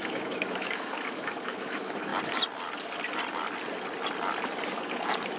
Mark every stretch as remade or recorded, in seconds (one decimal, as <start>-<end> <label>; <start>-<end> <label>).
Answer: 0.0-2.1 remade; 2.1-5.4 recorded